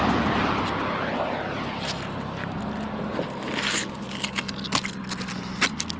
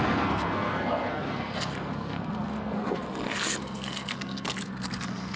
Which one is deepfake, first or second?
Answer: second